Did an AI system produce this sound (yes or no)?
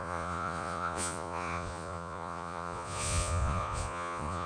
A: yes